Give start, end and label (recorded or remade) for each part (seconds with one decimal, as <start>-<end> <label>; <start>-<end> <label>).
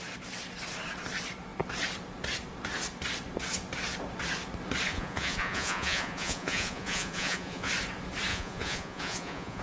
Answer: 0.0-4.9 recorded; 4.9-7.7 remade; 7.7-8.3 recorded; 8.3-9.6 remade